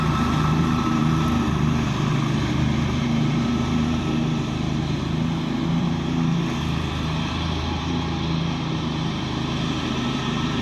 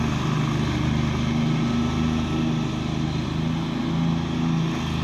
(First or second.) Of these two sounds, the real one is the second